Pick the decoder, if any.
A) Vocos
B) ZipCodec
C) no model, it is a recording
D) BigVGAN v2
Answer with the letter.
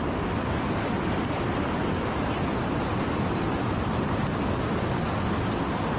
C